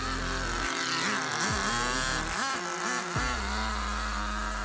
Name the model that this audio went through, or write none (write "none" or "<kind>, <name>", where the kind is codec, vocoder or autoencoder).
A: none